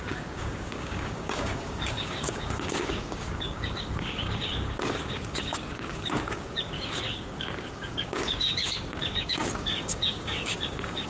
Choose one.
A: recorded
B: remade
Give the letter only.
B